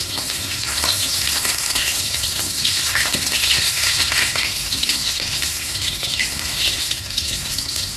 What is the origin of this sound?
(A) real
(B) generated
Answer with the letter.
B